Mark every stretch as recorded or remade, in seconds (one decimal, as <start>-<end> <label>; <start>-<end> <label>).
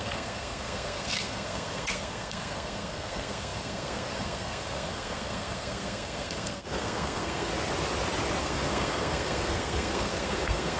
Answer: 0.0-7.5 remade; 7.5-8.4 recorded; 8.4-10.8 remade